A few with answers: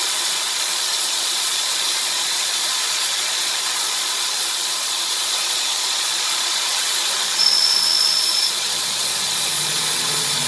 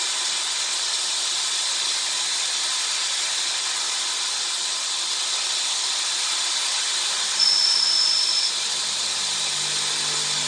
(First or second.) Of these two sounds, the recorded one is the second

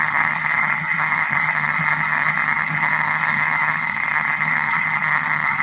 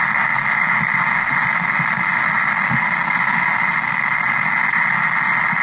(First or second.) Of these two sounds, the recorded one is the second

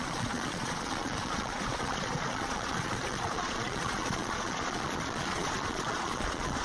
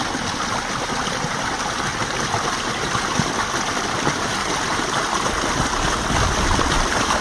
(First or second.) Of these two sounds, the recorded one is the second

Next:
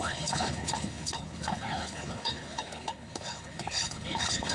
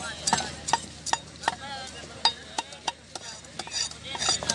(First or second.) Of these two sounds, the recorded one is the second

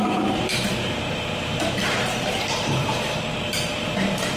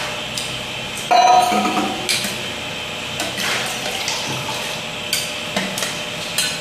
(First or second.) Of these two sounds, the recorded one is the second